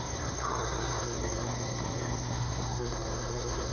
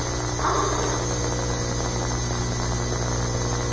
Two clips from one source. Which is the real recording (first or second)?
second